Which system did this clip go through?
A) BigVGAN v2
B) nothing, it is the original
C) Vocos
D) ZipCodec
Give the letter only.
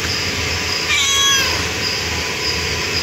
B